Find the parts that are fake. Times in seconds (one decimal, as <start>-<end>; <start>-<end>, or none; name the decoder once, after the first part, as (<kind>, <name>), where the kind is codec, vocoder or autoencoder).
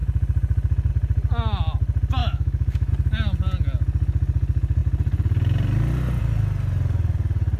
2.2-2.9 (autoencoder, DAC-VAE)